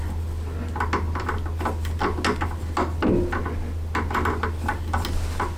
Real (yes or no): yes